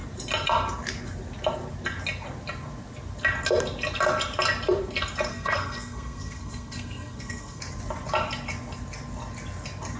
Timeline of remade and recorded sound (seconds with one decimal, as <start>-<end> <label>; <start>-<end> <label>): 0.0-5.3 recorded; 5.3-7.6 remade; 7.6-10.0 recorded